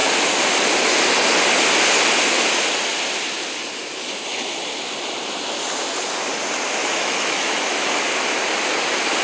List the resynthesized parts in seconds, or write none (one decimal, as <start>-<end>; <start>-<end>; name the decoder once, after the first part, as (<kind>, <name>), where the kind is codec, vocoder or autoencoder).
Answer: 6.8-7.9 (autoencoder, DAC-VAE)